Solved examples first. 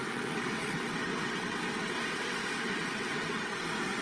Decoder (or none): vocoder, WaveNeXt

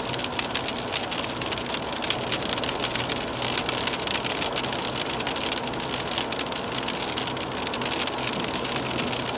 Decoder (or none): none